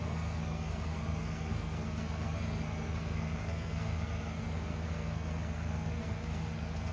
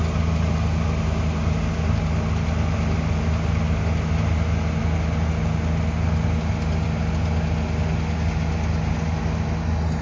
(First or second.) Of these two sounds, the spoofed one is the first